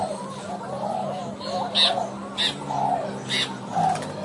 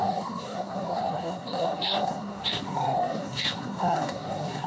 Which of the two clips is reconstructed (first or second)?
second